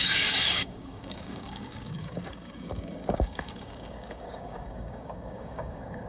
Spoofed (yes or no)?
yes